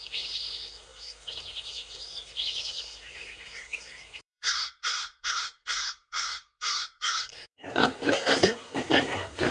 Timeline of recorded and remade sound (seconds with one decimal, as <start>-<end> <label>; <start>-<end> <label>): 0.0-9.5 remade